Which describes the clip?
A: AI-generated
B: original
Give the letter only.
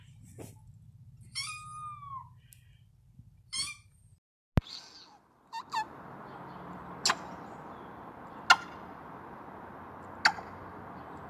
B